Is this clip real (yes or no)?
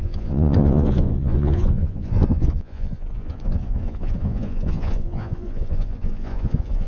no